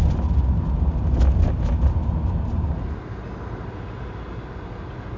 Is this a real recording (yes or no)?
yes